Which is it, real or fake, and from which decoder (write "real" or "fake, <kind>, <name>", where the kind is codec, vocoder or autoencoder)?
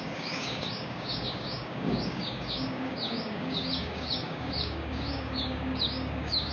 fake, codec, DAC